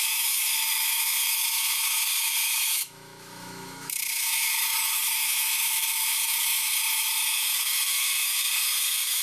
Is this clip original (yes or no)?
no